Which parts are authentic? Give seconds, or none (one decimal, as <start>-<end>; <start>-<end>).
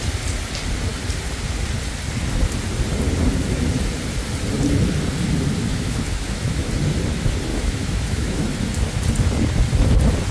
0.0-5.7; 6.7-7.5; 8.4-10.3